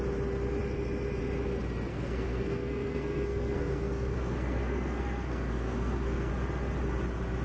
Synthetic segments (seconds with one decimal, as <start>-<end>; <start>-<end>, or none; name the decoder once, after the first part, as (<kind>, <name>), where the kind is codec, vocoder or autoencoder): 1.9-6.3 (codec, SNAC)